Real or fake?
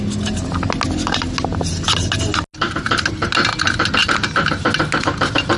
real